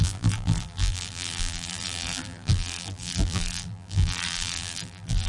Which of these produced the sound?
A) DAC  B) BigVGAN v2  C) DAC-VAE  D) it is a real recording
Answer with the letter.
B